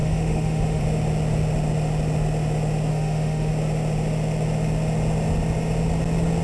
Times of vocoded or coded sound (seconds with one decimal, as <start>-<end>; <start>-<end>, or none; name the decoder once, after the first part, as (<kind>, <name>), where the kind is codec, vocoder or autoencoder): 0.0-0.8 (autoencoder, DAC-VAE); 2.9-3.5